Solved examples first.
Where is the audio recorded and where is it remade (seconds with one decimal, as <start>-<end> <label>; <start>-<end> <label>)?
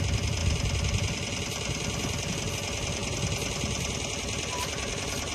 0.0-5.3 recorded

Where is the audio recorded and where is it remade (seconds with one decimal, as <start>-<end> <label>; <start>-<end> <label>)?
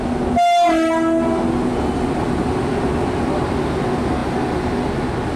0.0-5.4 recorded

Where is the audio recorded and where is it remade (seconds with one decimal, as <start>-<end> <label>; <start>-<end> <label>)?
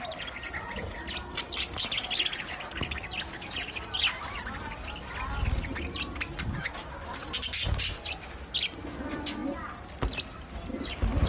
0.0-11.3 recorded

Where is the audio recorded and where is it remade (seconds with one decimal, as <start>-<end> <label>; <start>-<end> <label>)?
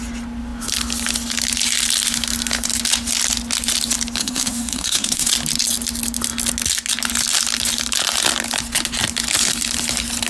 0.0-4.2 recorded; 4.2-5.3 remade; 5.3-10.3 recorded